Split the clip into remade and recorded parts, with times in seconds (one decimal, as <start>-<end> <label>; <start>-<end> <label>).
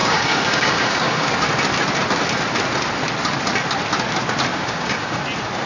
0.0-1.3 remade; 1.3-4.5 recorded; 4.5-5.2 remade; 5.2-5.7 recorded